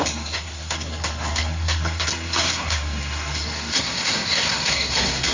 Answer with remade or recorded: remade